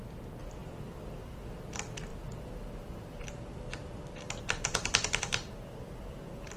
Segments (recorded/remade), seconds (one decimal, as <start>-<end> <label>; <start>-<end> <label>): 0.0-2.1 recorded; 2.1-5.8 remade; 5.8-6.6 recorded